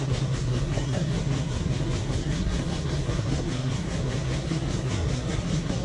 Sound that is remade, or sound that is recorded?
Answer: remade